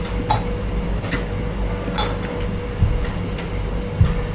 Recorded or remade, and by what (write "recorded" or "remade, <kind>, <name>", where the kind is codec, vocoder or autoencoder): recorded